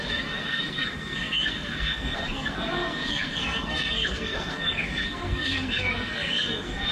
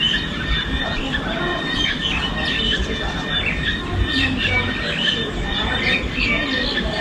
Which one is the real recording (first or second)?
second